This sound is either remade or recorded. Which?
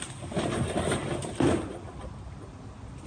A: recorded